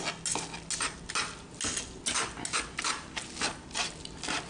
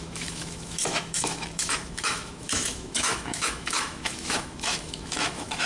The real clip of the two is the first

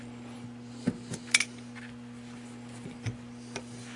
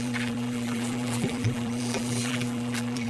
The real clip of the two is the first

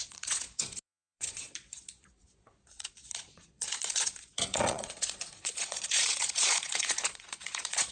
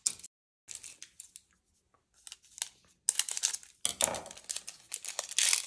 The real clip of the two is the second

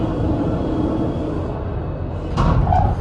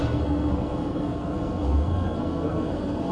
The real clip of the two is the first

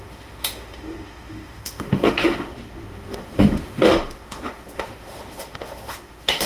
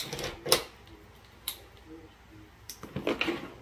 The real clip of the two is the second